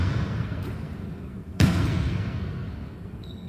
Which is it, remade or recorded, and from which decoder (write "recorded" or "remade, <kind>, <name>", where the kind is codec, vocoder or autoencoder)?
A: remade, codec, SNAC